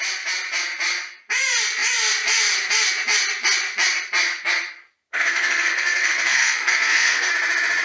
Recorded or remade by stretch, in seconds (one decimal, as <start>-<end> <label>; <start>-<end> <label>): 0.0-5.1 recorded; 5.1-7.3 remade; 7.3-7.8 recorded